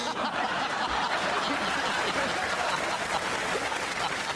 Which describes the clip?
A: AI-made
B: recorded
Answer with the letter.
B